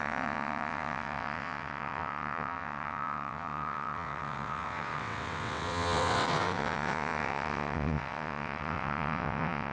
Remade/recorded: remade